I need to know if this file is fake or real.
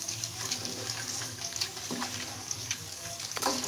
fake